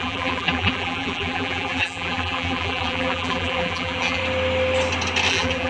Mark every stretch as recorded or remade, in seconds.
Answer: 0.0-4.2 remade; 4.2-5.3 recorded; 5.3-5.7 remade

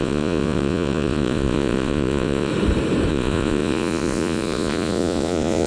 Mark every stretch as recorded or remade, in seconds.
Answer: 0.0-2.5 remade; 2.5-3.1 recorded; 3.1-5.7 remade

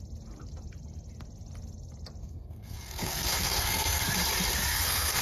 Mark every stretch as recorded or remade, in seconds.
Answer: 0.0-2.2 recorded; 2.2-4.1 remade; 4.1-4.7 recorded; 4.7-5.2 remade

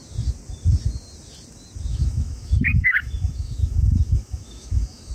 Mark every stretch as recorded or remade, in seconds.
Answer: 0.0-1.9 recorded; 1.9-5.1 remade

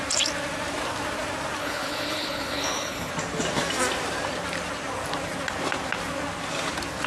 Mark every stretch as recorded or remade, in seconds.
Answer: 0.0-1.6 recorded; 1.6-3.1 remade; 3.1-7.1 recorded

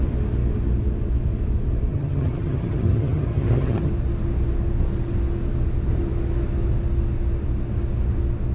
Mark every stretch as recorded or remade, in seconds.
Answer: 0.0-1.9 recorded; 1.9-3.9 remade; 3.9-8.5 recorded